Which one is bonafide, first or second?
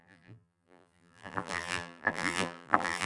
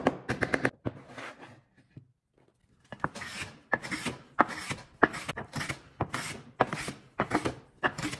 second